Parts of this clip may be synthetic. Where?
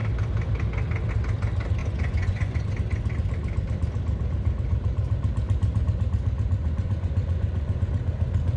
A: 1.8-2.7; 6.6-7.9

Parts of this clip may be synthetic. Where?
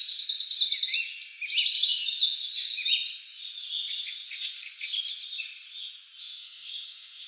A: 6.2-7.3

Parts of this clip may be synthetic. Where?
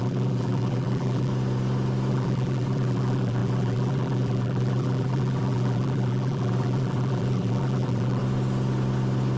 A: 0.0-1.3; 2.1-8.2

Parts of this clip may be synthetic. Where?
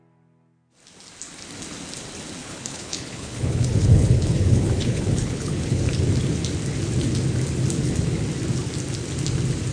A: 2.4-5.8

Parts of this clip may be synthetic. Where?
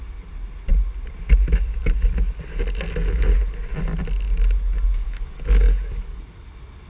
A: 5.0-6.2